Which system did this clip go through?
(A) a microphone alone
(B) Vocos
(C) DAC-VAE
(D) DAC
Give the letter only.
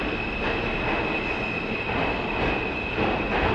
A